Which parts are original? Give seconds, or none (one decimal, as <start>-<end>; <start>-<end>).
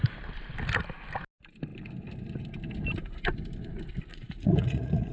0.0-4.1